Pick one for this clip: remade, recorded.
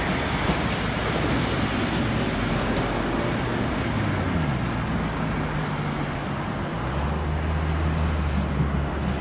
recorded